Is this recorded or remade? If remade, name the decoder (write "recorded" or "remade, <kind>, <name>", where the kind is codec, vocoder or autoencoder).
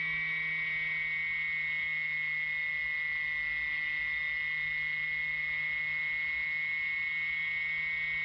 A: recorded